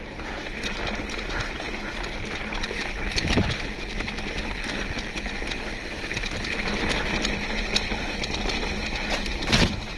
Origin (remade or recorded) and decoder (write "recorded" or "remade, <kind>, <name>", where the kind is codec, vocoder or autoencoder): recorded